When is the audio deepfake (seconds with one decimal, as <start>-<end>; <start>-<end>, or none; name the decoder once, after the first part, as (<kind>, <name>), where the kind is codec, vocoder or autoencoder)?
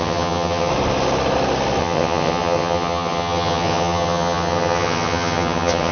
0.0-0.7 (vocoder, HiFi-GAN); 1.8-5.9